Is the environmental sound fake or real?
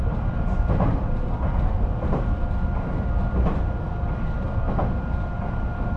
real